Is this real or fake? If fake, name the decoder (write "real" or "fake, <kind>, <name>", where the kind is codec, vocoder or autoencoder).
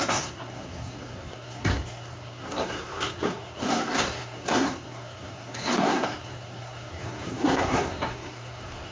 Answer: fake, codec, SNAC